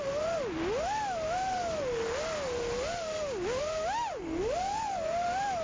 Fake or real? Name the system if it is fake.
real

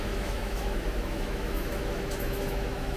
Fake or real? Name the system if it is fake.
fake, autoencoder, DAC-VAE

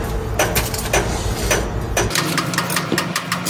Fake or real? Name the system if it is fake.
real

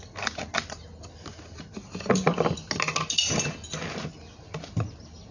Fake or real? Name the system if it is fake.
real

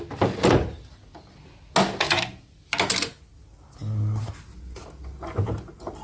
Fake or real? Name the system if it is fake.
real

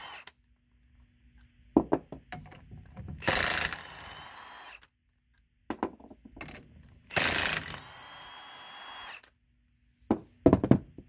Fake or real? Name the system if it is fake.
real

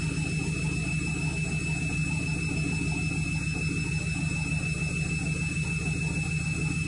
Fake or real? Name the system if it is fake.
real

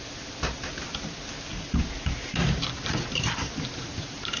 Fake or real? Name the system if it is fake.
real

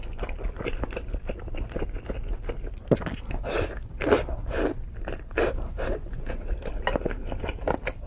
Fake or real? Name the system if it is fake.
real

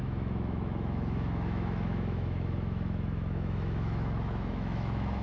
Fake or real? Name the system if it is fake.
fake, autoencoder, DAC-VAE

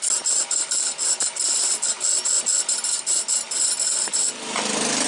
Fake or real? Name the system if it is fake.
real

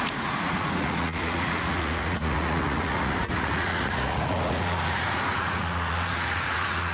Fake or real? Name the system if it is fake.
fake, vocoder, Vocos